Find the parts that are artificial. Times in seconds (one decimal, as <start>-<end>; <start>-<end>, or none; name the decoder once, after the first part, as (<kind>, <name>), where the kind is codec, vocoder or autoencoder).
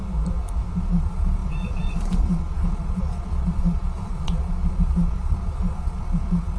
0.8-6.6 (vocoder, Vocos)